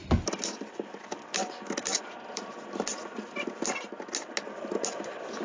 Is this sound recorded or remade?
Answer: recorded